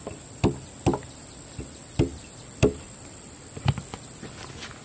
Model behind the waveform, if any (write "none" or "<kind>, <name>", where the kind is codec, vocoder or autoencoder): none